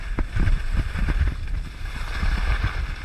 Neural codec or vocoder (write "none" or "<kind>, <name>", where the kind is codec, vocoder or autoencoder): none